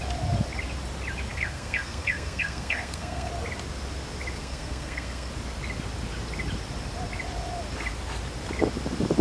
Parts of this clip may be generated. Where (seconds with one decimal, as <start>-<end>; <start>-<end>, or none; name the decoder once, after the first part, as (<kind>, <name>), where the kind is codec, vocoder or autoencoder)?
1.3-3.3 (codec, SNAC); 4.4-5.3

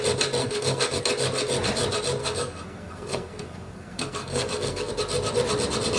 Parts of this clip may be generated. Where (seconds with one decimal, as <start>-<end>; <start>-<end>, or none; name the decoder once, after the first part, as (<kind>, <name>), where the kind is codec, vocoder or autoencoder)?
0.4-1.0 (codec, SNAC); 2.2-4.9

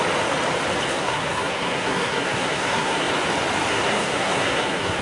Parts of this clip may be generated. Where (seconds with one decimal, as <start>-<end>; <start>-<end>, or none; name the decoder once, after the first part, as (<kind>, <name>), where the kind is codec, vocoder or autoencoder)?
0.9-3.1 (codec, SNAC); 3.7-5.0

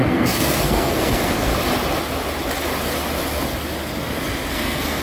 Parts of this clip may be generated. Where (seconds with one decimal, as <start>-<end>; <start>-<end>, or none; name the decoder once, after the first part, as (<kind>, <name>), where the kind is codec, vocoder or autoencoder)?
0.0-1.5 (codec, SNAC); 4.5-5.0

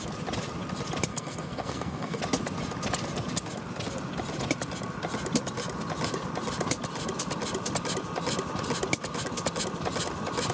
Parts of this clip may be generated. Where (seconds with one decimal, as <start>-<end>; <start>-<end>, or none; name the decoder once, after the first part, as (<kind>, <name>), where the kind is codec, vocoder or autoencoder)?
1.1-2.2 (codec, SNAC)